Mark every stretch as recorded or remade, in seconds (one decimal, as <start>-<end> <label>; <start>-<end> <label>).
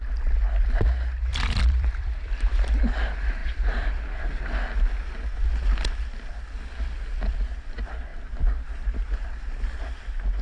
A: 0.0-1.3 recorded; 1.3-2.3 remade; 2.3-3.4 recorded; 3.4-4.4 remade; 4.4-10.4 recorded